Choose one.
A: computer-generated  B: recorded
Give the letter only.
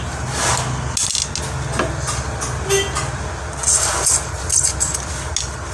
B